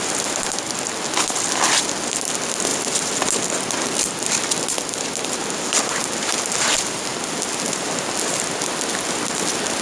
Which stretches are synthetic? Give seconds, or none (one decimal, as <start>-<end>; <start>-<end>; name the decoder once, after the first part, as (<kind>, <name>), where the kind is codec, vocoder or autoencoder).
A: none